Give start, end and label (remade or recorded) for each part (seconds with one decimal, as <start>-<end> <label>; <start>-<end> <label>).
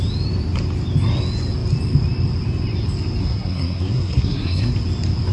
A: 0.0-3.2 recorded; 3.2-4.7 remade; 4.7-5.3 recorded